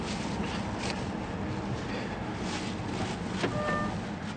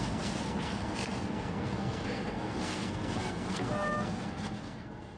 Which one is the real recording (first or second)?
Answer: first